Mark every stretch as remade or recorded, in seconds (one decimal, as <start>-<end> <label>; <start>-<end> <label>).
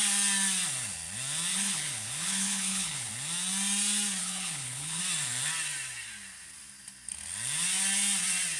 0.0-1.5 recorded; 1.5-3.1 remade; 3.1-4.2 recorded; 4.2-5.0 remade; 5.0-8.6 recorded